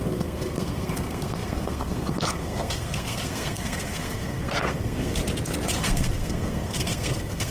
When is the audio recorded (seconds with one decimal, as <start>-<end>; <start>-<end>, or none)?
5.2-5.8